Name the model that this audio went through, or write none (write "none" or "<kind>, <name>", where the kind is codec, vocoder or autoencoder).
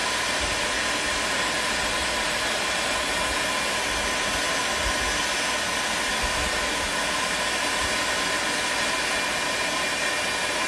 none